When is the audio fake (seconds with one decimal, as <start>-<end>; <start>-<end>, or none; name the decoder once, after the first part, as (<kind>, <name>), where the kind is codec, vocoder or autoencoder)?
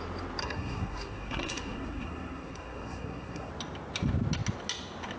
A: 0.4-3.5 (codec, SNAC)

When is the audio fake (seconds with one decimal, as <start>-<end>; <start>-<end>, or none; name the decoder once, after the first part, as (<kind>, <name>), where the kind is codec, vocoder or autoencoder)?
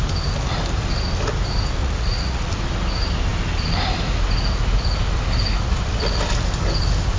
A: 1.8-2.5 (vocoder, Vocos)